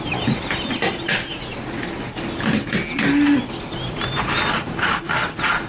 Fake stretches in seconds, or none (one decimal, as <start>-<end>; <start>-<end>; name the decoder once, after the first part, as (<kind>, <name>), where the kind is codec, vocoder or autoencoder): none